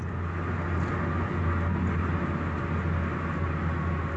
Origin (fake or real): real